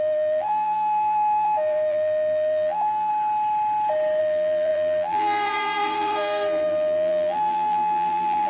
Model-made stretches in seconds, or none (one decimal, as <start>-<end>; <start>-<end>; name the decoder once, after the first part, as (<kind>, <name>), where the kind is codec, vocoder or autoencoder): 0.0-3.1 (vocoder, BigVGAN v2); 4.2-8.5